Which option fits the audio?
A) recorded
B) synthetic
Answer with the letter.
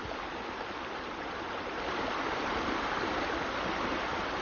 B